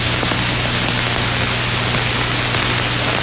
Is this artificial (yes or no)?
no